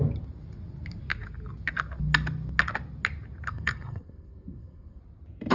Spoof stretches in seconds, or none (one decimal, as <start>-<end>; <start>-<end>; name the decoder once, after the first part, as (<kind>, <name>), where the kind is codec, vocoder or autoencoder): 3.5-5.0 (codec, SNAC)